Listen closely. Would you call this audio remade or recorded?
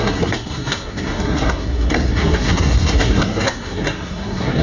remade